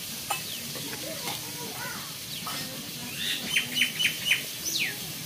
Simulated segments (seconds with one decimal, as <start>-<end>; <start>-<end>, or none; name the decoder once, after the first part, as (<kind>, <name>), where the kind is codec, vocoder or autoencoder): none

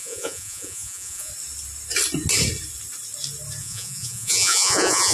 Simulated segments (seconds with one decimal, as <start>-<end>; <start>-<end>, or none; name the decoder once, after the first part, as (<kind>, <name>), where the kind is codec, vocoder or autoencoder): 0.0-1.3 (vocoder, Vocos); 3.6-5.1

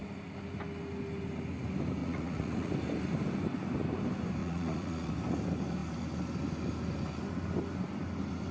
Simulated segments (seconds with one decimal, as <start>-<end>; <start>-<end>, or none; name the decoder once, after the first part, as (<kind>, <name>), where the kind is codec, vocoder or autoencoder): 2.0-2.7 (vocoder, Vocos); 4.4-5.1